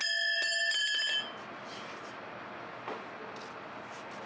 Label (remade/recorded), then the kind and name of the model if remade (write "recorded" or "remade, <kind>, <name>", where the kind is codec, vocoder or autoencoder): recorded